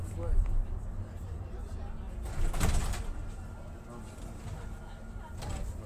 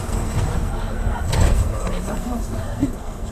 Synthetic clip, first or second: second